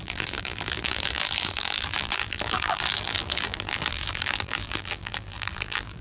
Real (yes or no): no